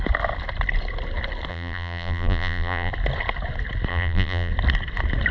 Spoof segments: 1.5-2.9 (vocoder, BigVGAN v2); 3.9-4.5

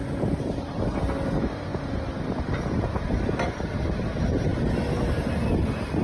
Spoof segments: 0.0-1.1 (vocoder, BigVGAN v2)

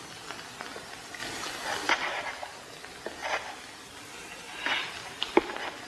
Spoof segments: none

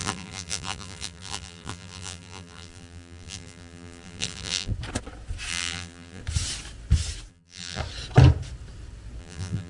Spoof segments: 0.0-4.7 (vocoder, BigVGAN v2); 5.5-6.2; 7.3-7.8; 9.2-9.7